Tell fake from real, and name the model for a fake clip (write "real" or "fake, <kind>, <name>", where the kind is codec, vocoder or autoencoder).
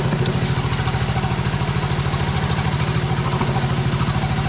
real